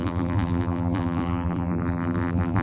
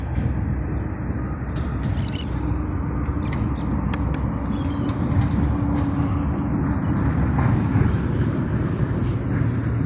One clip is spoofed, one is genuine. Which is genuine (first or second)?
second